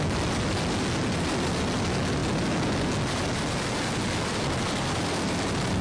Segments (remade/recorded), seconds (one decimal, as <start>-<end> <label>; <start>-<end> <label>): 0.0-5.8 recorded